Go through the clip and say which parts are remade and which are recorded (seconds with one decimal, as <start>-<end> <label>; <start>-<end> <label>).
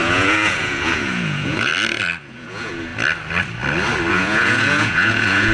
0.0-1.7 remade; 1.7-2.2 recorded; 2.2-2.9 remade; 2.9-4.1 recorded; 4.1-5.5 remade